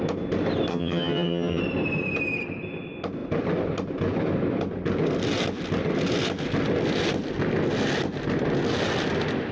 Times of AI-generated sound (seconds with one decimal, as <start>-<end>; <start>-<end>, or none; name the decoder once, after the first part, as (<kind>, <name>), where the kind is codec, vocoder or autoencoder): 0.7-1.6 (vocoder, HiFi-GAN)